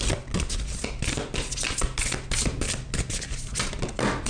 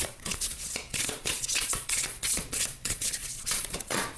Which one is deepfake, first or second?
second